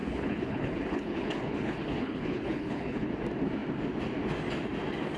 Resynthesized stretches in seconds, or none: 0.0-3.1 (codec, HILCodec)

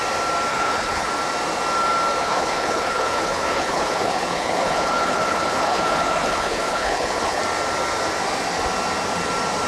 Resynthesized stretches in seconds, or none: 0.5-1.1 (codec, HILCodec); 2.2-7.4